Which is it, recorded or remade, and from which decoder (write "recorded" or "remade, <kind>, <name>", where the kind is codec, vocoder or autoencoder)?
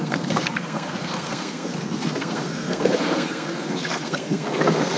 remade, codec, SNAC